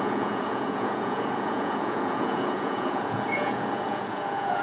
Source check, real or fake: fake